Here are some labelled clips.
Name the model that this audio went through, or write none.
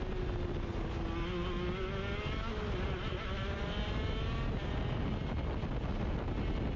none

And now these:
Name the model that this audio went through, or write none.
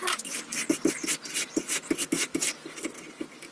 none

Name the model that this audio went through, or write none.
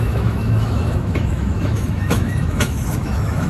autoencoder, DAC-VAE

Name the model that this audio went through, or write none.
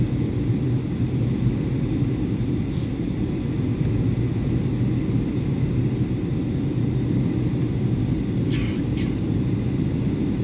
none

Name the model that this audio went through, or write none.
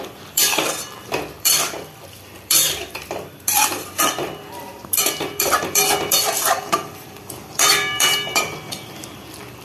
vocoder, BigVGAN v2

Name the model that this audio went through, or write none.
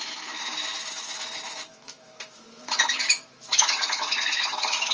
autoencoder, DAC-VAE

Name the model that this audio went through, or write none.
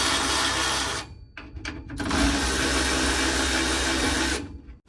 none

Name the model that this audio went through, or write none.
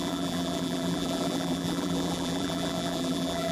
vocoder, BigVGAN v2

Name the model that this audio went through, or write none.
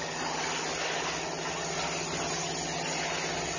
none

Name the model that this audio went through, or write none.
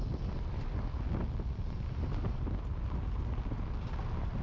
none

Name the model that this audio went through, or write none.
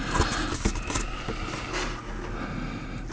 none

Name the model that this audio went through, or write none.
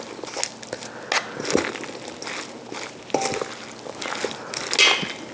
none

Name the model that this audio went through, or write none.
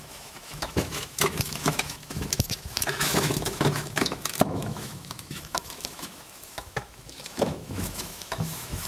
autoencoder, DAC-VAE